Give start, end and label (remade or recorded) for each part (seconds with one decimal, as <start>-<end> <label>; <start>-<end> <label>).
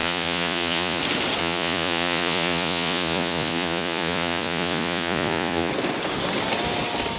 0.0-1.0 remade; 1.0-1.4 recorded; 1.4-5.7 remade; 5.7-7.2 recorded